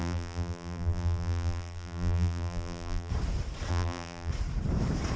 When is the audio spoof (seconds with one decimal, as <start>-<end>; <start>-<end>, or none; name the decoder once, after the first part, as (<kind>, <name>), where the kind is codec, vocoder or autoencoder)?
0.0-3.1 (vocoder, BigVGAN v2); 3.7-4.3